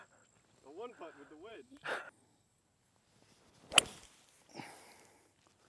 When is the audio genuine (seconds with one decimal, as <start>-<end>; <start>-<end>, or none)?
0.0-1.5; 2.6-5.7